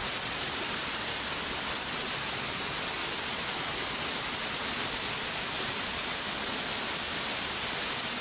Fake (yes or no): no